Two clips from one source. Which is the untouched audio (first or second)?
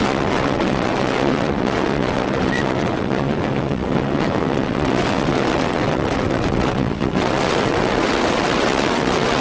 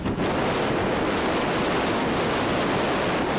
second